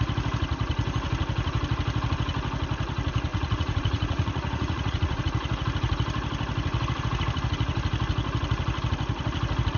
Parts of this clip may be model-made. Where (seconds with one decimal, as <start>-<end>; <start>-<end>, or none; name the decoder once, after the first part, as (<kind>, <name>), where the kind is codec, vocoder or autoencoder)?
3.3-5.2 (vocoder, Vocos)

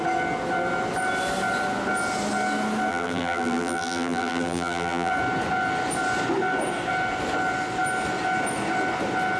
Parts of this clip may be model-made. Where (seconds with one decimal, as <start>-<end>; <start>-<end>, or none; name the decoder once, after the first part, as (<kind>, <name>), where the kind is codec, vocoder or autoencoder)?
2.9-5.1 (vocoder, BigVGAN v2)

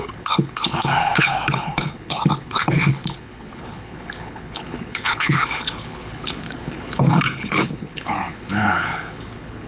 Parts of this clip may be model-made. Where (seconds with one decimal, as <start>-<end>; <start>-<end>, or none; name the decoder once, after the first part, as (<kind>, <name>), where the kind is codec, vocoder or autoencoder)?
0.0-9.7 (codec, HILCodec)

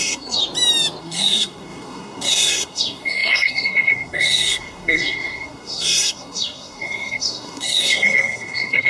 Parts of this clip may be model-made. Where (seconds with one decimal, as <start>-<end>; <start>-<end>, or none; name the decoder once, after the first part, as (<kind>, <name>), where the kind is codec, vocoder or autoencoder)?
0.0-0.4 (codec, SNAC); 1.0-8.9

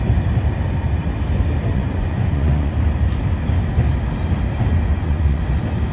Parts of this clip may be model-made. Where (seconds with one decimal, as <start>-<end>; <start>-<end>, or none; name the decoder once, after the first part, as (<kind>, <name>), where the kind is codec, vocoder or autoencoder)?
1.7-2.7 (vocoder, Vocos); 4.9-5.4

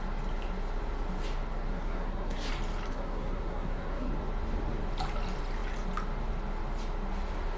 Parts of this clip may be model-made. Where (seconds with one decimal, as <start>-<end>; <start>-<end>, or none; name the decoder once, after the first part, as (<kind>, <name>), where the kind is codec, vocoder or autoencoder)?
1.7-2.5 (codec, SNAC); 2.9-4.1